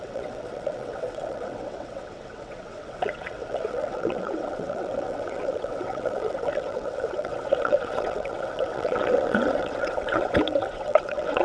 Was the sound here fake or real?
fake